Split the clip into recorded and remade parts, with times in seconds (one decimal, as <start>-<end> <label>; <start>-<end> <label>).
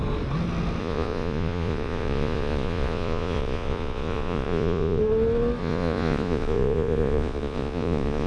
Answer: 0.0-0.8 recorded; 0.8-5.0 remade; 5.0-5.6 recorded; 5.6-8.3 remade